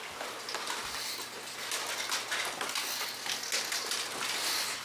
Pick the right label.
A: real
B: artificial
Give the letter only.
A